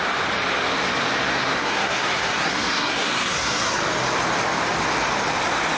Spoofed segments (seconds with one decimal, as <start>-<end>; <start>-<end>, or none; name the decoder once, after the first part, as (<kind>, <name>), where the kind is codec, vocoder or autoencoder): 1.5-3.8 (codec, SNAC)